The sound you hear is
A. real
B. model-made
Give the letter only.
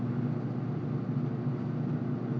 A